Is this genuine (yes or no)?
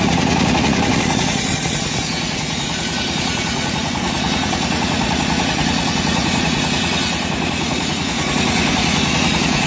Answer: no